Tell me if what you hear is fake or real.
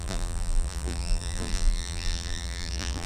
fake